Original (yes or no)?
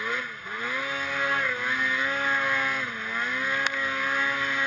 yes